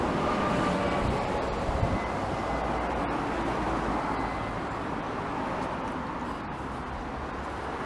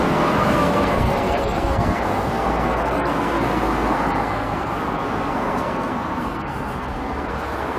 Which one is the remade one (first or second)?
second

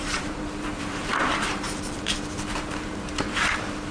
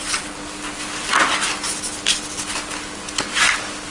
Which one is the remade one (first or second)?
first